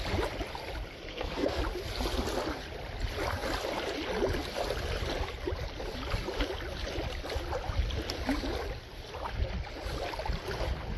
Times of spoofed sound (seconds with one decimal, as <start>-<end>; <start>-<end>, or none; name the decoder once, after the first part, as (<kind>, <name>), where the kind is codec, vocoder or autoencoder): 1.1-1.6 (codec, SNAC)